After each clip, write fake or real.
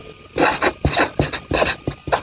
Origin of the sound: real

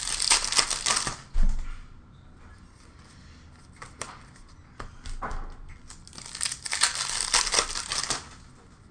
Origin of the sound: real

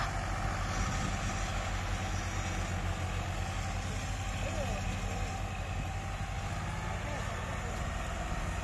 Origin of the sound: real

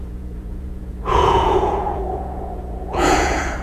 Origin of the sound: fake